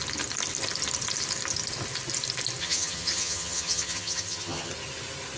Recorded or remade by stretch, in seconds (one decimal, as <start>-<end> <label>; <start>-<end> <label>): 0.0-2.6 recorded; 2.6-4.7 remade; 4.7-5.4 recorded